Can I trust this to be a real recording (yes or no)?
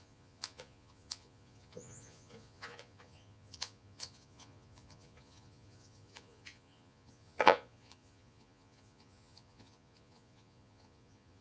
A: no